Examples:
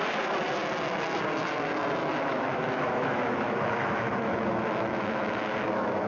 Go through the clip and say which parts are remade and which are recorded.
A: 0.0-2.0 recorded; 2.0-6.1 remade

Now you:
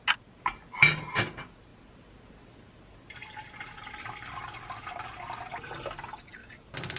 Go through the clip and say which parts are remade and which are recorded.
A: 0.0-7.0 recorded

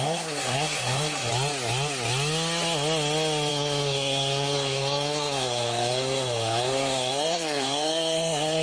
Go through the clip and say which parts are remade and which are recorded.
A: 0.0-1.3 remade; 1.3-3.5 recorded; 3.5-8.6 remade

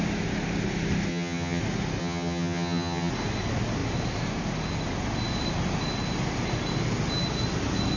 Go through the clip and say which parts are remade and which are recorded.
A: 0.0-1.1 recorded; 1.1-1.6 remade; 1.6-2.0 recorded; 2.0-3.1 remade; 3.1-8.0 recorded